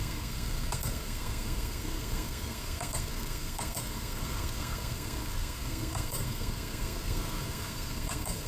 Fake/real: fake